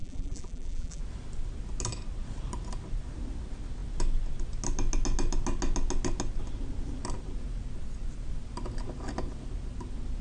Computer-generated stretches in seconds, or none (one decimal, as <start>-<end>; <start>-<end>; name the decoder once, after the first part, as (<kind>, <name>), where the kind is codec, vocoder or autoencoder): 0.0-1.0 (vocoder, BigVGAN v2)